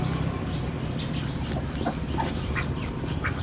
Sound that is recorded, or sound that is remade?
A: recorded